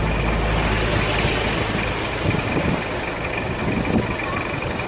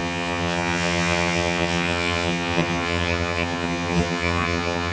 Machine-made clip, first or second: second